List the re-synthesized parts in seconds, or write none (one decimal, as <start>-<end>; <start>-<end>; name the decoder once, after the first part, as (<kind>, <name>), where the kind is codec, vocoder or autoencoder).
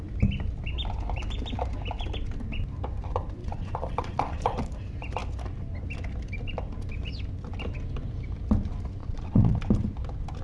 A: 3.4-4.7 (vocoder, Vocos); 9.0-9.6